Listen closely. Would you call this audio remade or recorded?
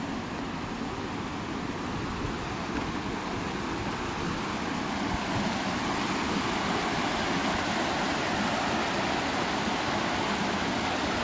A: recorded